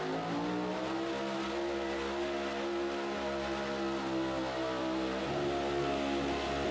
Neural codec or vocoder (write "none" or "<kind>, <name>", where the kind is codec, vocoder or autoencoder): none